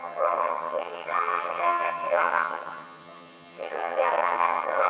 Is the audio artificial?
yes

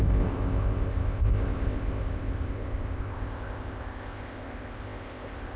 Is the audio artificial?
yes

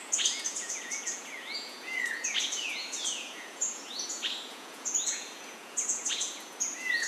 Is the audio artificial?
yes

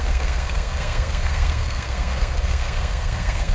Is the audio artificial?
yes